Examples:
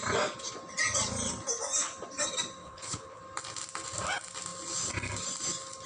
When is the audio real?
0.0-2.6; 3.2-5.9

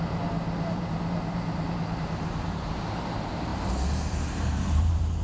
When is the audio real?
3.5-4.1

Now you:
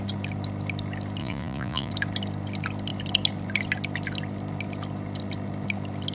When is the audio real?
0.0-1.2; 1.9-6.1

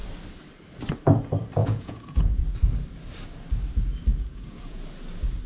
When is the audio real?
0.0-1.6; 2.4-4.1; 4.8-5.5